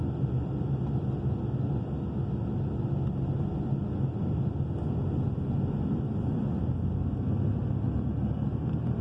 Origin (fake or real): real